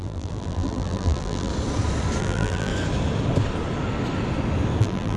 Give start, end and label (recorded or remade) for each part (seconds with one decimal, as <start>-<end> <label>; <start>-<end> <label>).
0.0-1.5 remade; 1.5-2.2 recorded; 2.2-2.7 remade; 2.7-4.8 recorded; 4.8-5.2 remade